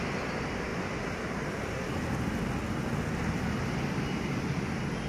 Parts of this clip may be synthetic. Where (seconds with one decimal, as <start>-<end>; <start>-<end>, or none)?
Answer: none